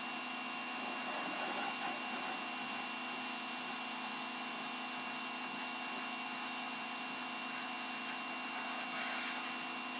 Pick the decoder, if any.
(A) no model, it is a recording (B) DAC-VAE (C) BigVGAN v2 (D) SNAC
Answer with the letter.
A